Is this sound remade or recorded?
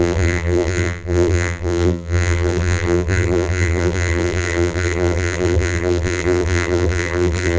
remade